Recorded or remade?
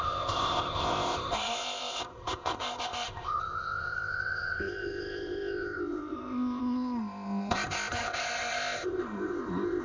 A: remade